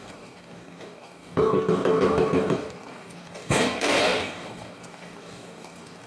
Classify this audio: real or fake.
fake